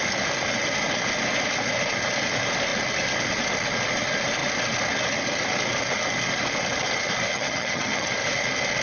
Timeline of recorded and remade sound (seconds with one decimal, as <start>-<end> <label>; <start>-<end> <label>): 0.0-7.3 recorded; 7.3-8.1 remade; 8.1-8.8 recorded